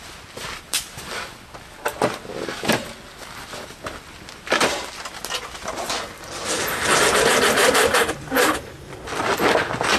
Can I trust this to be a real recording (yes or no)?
yes